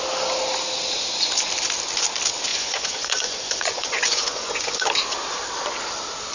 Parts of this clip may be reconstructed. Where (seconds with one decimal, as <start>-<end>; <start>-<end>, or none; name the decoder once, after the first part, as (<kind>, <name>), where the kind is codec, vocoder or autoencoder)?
2.5-4.9 (vocoder, Vocos)